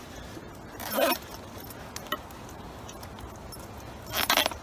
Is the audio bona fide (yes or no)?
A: yes